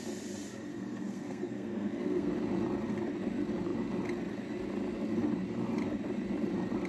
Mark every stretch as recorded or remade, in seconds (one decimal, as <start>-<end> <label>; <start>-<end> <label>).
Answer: 0.0-0.7 recorded; 0.7-2.3 remade; 2.3-6.9 recorded